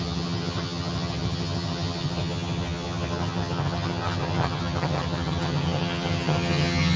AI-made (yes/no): yes